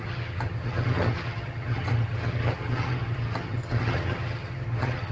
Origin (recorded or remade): remade